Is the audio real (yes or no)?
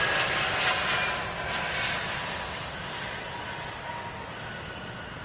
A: yes